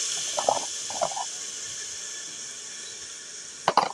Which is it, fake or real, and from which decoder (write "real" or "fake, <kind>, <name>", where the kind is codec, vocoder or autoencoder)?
real